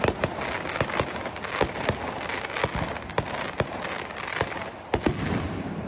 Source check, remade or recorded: recorded